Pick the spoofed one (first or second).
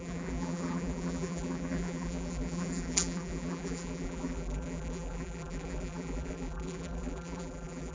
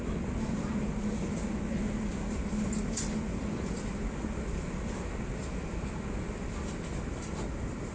first